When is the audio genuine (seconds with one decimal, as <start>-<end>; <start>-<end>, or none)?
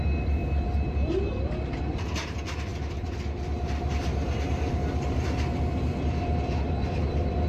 none